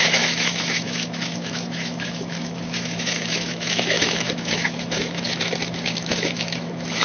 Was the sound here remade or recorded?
remade